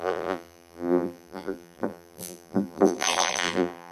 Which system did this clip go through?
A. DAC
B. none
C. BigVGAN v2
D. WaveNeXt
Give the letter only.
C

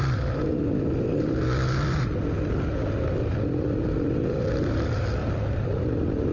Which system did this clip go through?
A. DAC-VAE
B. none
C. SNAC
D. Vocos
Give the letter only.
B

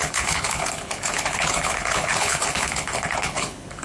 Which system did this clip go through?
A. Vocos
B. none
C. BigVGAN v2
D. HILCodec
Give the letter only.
D